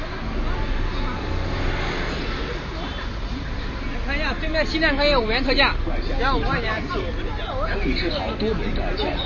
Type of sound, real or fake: real